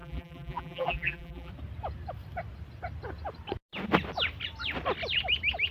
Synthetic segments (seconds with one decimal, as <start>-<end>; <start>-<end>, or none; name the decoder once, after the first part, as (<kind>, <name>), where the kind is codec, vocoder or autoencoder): 0.0-1.5 (vocoder, BigVGAN v2)